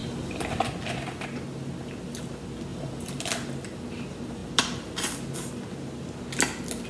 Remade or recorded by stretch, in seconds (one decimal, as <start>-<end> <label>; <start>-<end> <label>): 0.0-0.6 remade; 0.6-2.7 recorded; 2.7-3.2 remade; 3.2-6.9 recorded